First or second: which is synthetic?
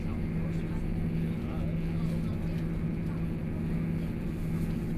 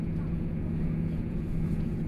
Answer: second